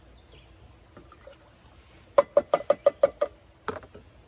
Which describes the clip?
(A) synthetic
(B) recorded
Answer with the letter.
B